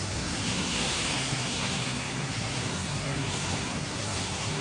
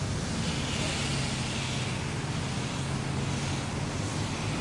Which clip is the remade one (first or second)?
first